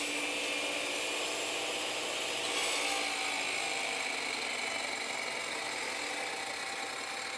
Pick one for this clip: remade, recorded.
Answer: recorded